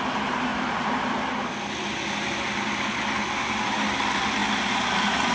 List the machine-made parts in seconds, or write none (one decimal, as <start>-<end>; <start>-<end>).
none